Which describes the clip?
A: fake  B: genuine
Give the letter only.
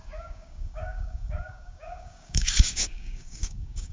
A